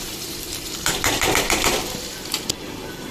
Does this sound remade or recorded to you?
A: remade